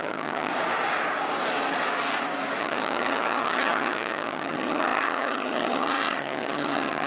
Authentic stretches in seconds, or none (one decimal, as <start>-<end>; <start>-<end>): 0.5-2.6